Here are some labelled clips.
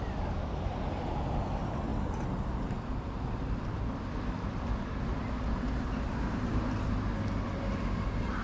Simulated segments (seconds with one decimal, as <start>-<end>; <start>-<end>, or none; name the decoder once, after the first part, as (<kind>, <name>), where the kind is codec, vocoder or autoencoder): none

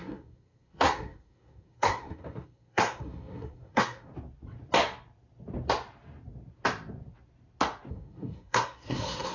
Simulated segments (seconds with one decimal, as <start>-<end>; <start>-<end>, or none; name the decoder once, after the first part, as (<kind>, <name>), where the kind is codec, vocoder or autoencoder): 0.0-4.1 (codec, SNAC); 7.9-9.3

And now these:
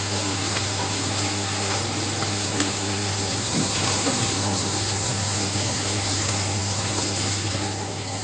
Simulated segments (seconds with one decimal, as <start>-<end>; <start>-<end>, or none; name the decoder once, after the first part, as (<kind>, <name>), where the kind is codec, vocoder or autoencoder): 0.0-1.8 (codec, SNAC); 2.3-8.2